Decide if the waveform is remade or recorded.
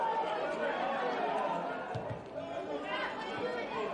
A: recorded